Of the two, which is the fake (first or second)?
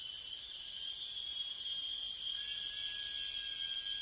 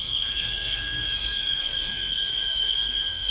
second